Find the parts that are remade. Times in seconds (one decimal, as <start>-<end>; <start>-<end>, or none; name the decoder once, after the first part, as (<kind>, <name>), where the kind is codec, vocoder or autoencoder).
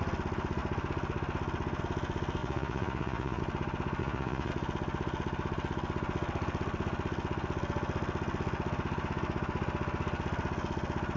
2.4-3.4 (vocoder, Vocos); 4.0-4.5